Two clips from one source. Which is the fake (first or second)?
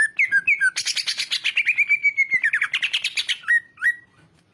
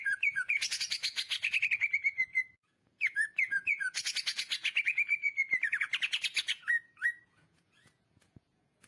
second